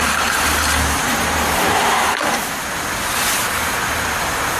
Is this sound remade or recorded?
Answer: recorded